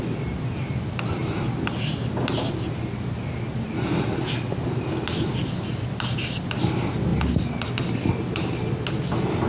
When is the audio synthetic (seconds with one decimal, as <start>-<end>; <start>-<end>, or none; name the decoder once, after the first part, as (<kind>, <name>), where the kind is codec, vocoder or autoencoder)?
none